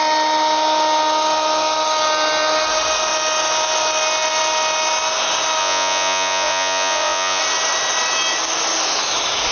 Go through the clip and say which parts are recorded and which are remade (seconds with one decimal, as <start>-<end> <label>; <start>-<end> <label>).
0.0-5.6 recorded; 5.6-7.4 remade; 7.4-9.5 recorded